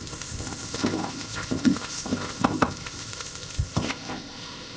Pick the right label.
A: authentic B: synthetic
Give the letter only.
B